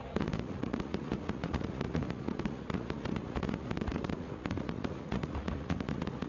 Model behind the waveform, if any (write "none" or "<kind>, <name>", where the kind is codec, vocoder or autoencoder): vocoder, Vocos